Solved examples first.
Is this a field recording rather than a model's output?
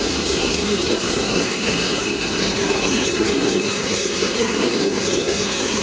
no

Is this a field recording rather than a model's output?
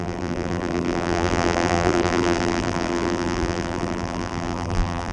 no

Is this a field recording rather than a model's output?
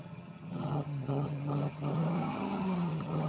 no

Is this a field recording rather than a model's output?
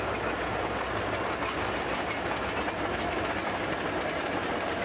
yes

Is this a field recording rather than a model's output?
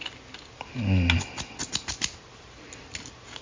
yes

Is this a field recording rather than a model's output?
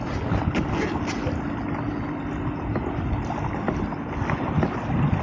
yes